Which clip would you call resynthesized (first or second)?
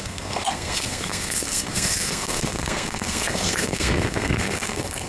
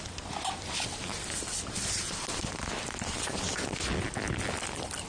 first